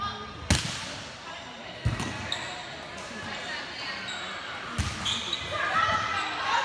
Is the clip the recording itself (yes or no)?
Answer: yes